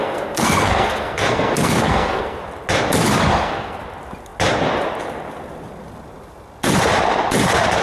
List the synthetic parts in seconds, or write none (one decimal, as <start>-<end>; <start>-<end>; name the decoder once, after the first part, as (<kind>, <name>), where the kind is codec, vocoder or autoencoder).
0.0-2.4 (codec, SNAC); 3.3-3.8